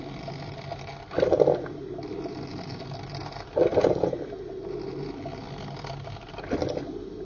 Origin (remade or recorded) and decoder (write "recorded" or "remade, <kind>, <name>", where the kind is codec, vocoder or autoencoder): recorded